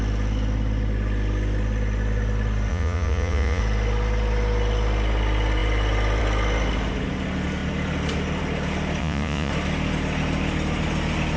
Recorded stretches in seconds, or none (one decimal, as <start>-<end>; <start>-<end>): 0.0-2.7; 3.6-9.0; 9.5-11.4